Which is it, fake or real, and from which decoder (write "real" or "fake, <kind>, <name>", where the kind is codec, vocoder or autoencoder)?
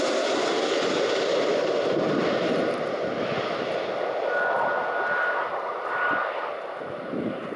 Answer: real